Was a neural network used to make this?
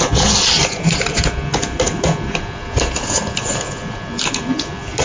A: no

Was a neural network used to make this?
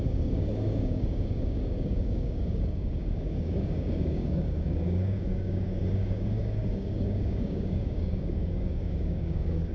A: yes